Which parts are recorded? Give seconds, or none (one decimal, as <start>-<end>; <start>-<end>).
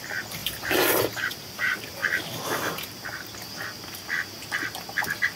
2.0-5.4